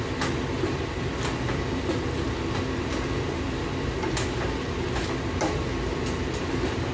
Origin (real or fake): real